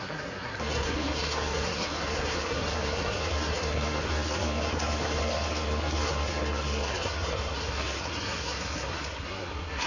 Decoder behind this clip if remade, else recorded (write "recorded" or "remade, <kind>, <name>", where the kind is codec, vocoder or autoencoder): remade, codec, SNAC